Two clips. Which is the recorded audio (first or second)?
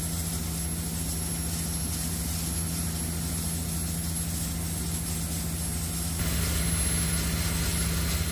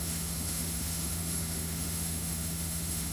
first